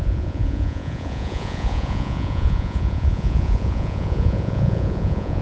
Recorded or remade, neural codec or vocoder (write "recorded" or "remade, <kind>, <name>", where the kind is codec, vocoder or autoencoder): remade, vocoder, Vocos